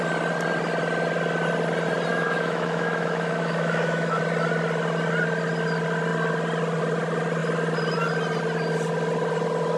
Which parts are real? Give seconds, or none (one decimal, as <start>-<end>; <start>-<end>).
0.0-2.1; 4.2-9.8